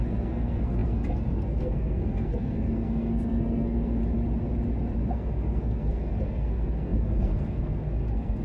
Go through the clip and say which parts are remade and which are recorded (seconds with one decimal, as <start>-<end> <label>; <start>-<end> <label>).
0.0-4.0 remade; 4.0-5.1 recorded; 5.1-8.4 remade